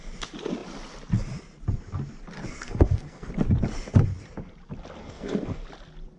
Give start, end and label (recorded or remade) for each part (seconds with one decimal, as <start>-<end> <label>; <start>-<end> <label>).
0.0-2.5 recorded; 2.5-3.3 remade; 3.3-5.0 recorded; 5.0-5.6 remade; 5.6-6.2 recorded